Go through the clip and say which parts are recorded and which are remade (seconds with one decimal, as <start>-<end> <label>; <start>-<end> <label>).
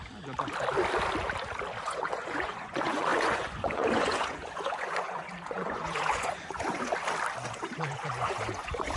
0.0-1.8 recorded; 1.8-6.9 remade; 6.9-7.5 recorded; 7.5-9.0 remade